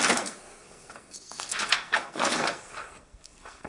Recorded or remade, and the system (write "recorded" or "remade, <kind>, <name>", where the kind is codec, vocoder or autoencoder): remade, codec, SNAC